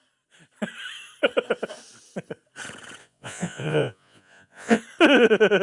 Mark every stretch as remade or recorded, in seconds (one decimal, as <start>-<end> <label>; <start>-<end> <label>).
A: 0.0-3.0 recorded; 3.0-4.8 remade; 4.8-5.6 recorded